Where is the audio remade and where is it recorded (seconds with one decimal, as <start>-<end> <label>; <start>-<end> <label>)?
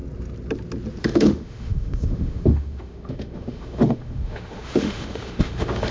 0.0-1.0 recorded; 1.0-5.9 remade